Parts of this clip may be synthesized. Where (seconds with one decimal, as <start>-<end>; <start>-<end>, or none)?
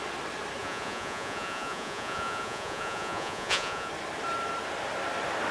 0.6-3.9